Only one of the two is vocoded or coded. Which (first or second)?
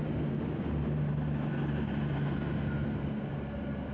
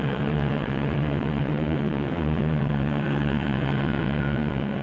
second